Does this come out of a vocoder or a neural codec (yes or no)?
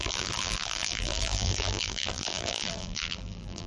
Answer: yes